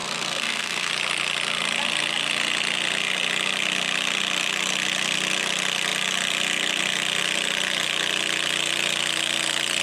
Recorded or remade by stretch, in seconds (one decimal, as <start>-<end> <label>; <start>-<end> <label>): 0.0-0.9 remade; 0.9-9.8 recorded